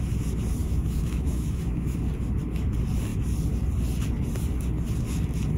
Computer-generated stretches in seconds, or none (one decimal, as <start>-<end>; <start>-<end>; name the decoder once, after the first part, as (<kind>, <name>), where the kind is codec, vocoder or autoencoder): 0.6-2.0 (autoencoder, DAC-VAE)